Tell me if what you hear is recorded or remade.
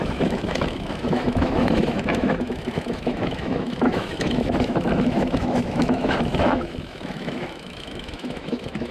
remade